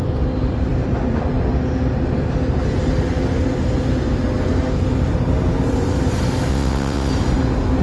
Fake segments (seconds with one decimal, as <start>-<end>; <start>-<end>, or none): 6.5-7.1